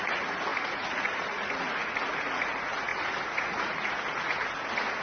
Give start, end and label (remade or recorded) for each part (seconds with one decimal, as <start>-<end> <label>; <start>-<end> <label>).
0.0-5.0 remade